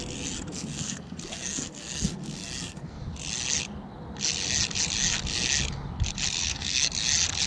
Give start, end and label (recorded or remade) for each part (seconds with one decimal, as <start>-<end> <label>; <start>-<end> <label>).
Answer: 0.0-0.5 recorded; 0.5-3.0 remade; 3.0-6.4 recorded; 6.4-6.9 remade; 6.9-7.5 recorded